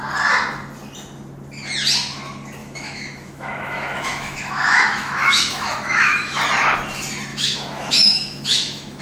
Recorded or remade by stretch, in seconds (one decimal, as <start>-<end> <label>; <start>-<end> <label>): 0.0-2.6 recorded; 2.6-6.4 remade; 6.4-7.3 recorded; 7.3-9.0 remade